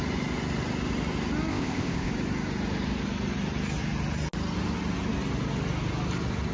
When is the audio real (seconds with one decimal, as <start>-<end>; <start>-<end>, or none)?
0.0-1.5; 2.1-6.5